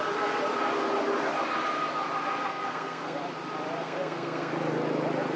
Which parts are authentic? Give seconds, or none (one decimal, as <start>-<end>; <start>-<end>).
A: 0.0-2.5; 3.2-3.8; 4.5-5.4